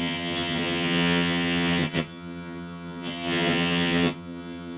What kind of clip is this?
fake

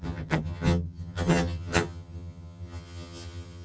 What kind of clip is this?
fake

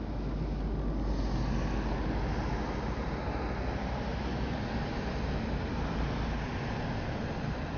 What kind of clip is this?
real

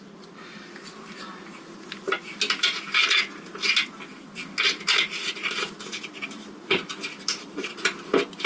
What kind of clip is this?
real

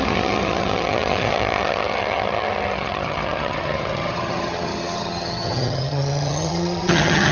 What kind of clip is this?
fake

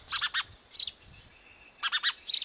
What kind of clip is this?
real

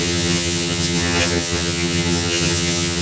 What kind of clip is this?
fake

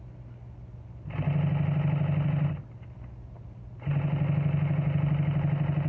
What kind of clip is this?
real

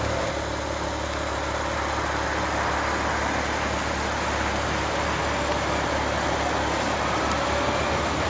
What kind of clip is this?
real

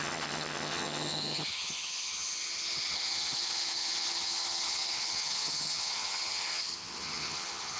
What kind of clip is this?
fake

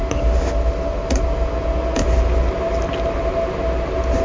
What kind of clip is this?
real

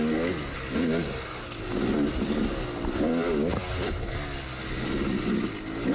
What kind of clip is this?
real